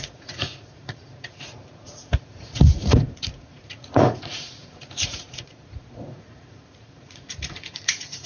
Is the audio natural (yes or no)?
no